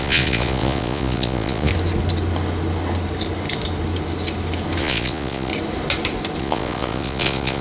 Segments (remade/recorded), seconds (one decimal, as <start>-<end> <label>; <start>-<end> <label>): 0.0-1.7 remade; 1.7-4.8 recorded; 4.8-5.5 remade; 5.5-6.4 recorded; 6.4-7.6 remade